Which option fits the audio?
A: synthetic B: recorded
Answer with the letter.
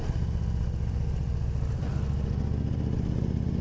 B